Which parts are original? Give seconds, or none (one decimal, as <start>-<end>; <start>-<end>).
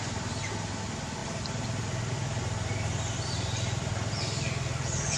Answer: 0.0-1.2; 4.1-5.2